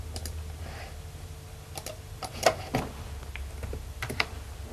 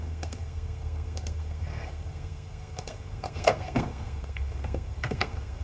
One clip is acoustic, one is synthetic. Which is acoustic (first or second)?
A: first